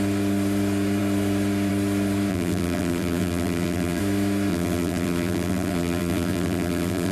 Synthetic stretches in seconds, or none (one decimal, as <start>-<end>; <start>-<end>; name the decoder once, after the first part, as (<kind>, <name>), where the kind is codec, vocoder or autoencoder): 2.3-4.0 (vocoder, BigVGAN v2); 4.5-7.1